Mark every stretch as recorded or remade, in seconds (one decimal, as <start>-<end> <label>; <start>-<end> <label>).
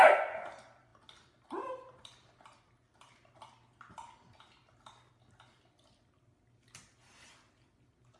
0.0-8.2 recorded